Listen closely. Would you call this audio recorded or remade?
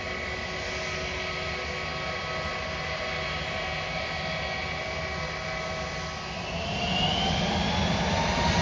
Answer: recorded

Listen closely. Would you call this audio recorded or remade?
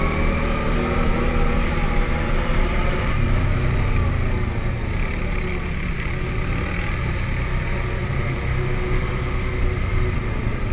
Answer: recorded